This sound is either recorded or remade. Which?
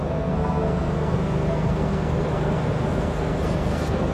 remade